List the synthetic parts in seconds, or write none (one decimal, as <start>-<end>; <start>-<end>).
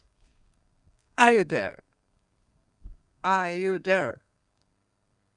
0.0-5.4